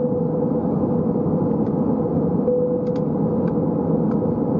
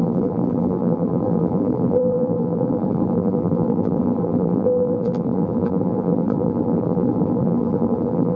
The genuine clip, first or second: first